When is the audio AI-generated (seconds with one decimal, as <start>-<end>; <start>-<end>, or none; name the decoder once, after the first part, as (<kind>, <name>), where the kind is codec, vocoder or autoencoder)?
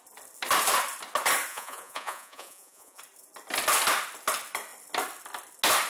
1.5-3.0 (vocoder, Vocos)